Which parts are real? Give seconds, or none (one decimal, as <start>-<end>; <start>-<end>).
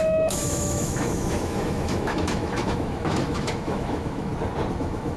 4.3-4.8